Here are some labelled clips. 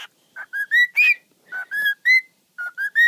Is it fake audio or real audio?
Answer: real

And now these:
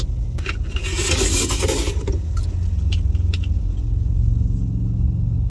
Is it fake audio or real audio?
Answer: real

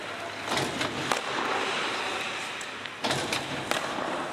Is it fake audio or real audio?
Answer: real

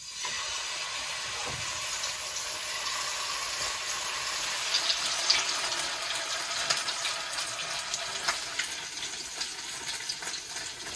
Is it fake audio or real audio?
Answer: real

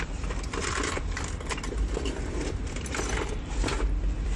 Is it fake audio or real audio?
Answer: fake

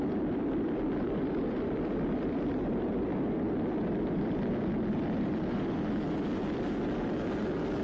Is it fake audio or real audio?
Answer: fake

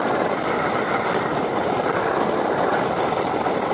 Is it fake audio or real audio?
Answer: real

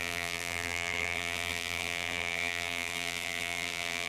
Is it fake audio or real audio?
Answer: fake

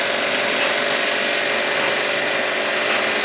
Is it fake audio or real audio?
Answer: real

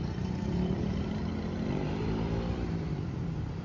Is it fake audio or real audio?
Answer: fake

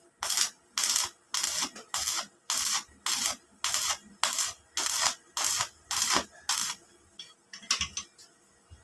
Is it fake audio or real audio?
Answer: real